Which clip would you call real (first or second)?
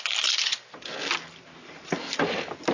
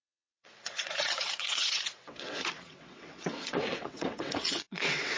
first